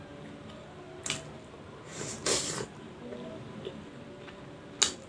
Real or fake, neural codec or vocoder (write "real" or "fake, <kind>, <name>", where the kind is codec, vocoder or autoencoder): real